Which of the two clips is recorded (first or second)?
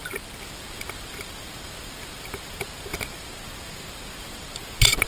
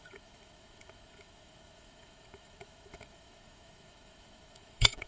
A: first